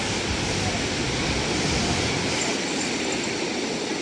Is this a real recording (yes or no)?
yes